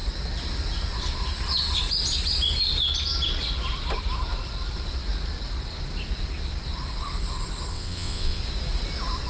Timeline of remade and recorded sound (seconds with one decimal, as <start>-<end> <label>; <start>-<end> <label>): 0.0-7.7 recorded; 7.7-8.4 remade; 8.4-9.3 recorded